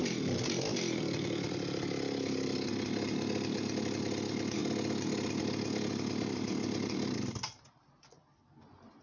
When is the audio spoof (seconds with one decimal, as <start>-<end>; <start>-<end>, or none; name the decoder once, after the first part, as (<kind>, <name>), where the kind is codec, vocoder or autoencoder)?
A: none